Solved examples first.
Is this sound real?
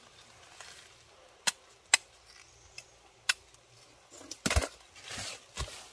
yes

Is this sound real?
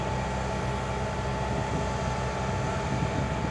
yes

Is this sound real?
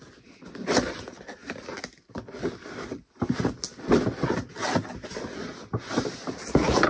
yes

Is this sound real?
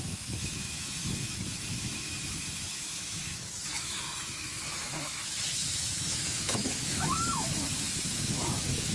no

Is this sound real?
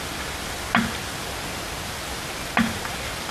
yes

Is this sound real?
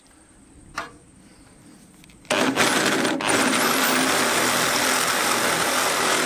yes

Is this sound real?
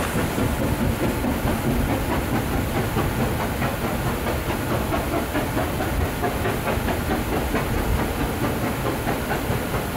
yes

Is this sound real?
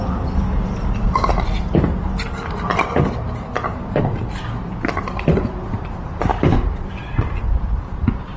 yes